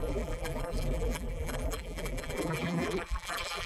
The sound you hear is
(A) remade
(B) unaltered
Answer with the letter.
A